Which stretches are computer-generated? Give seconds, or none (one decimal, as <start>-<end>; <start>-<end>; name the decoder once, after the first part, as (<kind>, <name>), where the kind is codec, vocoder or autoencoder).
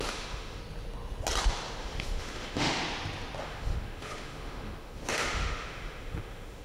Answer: 0.0-0.6 (autoencoder, DAC-VAE); 1.8-2.8; 3.4-6.6